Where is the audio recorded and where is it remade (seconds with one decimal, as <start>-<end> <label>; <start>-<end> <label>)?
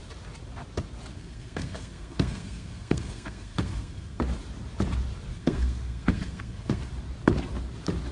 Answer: 0.0-1.1 recorded; 1.1-4.2 remade; 4.2-5.3 recorded; 5.3-6.9 remade; 6.9-8.1 recorded